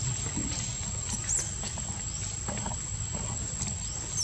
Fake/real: real